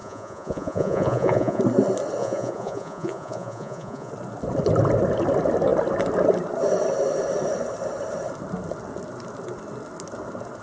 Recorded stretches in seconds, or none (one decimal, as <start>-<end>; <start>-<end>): 1.6-2.2; 4.1-10.6